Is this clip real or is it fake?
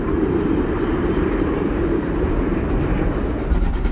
fake